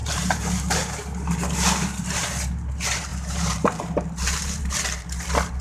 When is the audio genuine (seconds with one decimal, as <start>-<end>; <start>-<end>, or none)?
2.4-3.1; 4.6-5.6